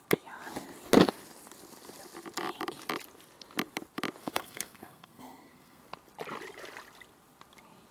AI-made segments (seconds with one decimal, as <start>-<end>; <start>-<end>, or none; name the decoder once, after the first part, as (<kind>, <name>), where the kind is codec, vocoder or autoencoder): 4.2-5.8 (codec, SNAC)